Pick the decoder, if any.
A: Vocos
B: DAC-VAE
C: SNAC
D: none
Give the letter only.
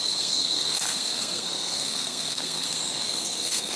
C